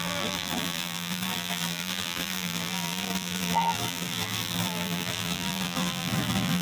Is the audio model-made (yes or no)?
yes